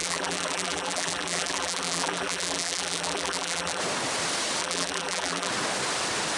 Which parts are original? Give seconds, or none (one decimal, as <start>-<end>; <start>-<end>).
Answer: 3.8-4.6; 5.5-6.4